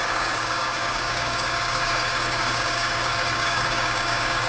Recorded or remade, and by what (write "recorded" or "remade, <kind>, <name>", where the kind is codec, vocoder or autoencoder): remade, codec, DAC